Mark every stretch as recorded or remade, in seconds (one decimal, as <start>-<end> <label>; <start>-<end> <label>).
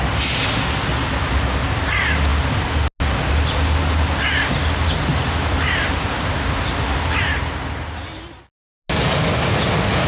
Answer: 0.0-10.1 recorded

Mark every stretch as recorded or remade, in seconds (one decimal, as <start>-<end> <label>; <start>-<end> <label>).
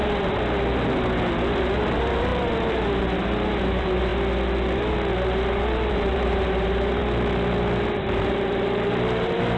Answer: 0.0-1.6 recorded; 1.6-4.1 remade; 4.1-5.9 recorded; 5.9-7.0 remade; 7.0-8.0 recorded; 8.0-9.6 remade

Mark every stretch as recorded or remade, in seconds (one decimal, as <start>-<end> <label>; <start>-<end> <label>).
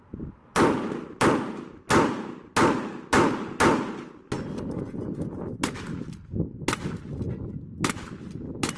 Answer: 0.0-8.8 recorded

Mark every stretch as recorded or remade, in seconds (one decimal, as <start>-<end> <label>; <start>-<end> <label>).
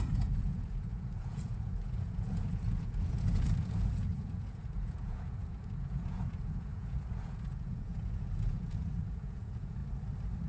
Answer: 0.0-9.8 remade; 9.8-10.5 recorded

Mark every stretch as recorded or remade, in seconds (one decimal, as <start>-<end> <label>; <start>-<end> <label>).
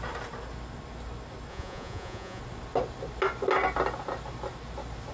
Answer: 0.0-1.5 recorded; 1.5-2.4 remade; 2.4-5.1 recorded